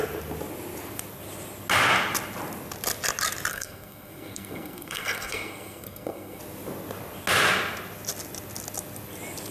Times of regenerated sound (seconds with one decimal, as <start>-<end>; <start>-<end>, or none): 3.5-6.4